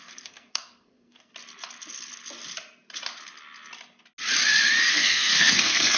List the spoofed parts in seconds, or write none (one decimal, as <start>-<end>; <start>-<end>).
0.0-1.3; 4.9-6.0